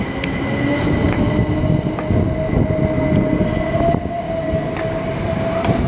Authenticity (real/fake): real